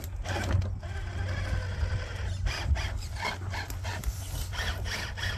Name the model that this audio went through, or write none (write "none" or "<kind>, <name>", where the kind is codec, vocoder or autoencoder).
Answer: none